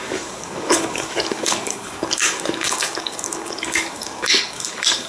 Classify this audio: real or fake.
fake